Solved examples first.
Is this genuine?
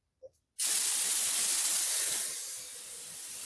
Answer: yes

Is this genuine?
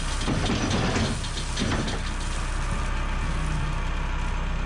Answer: yes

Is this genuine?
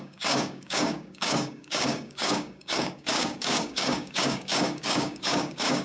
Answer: no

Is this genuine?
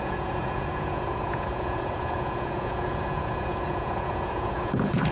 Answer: no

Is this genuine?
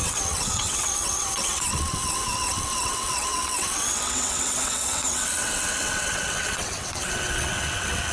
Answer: no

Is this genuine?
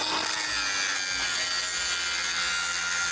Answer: yes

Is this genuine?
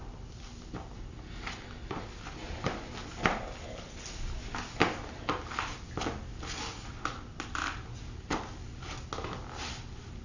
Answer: yes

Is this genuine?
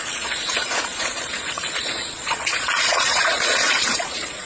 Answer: no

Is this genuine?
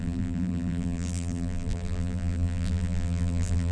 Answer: no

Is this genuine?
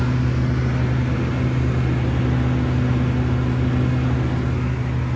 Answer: yes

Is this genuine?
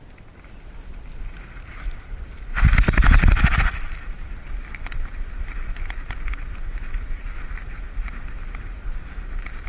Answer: yes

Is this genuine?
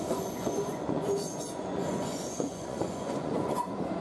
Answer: no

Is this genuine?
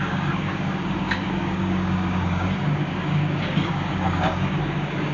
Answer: no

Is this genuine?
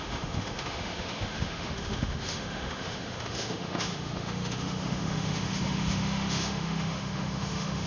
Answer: no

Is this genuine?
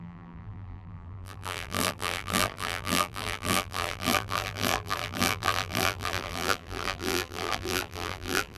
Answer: no